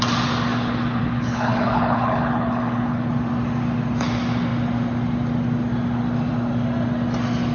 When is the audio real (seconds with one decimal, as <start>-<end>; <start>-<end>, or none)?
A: 0.0-0.5; 3.1-7.5